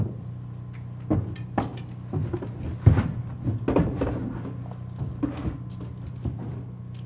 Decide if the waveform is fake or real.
real